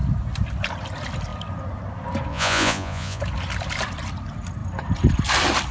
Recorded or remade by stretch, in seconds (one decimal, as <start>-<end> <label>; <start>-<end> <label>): 0.0-2.3 recorded; 2.3-3.2 remade; 3.2-5.7 recorded